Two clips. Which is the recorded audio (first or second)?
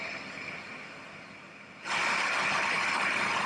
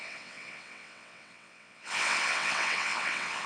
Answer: first